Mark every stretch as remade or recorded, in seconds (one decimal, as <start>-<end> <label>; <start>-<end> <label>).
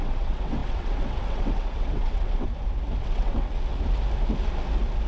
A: 0.0-2.5 remade; 2.5-3.0 recorded; 3.0-3.5 remade; 3.5-5.1 recorded